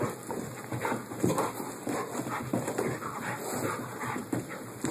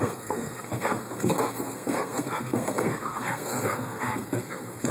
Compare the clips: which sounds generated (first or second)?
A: second